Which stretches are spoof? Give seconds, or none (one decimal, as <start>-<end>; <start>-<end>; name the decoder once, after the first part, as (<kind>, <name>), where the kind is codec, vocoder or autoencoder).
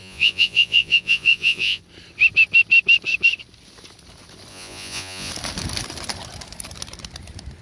0.0-1.8 (vocoder, Vocos); 4.5-5.3